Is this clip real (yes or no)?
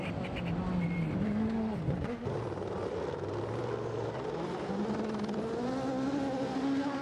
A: yes